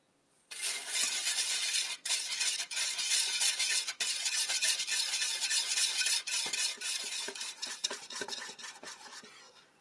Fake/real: fake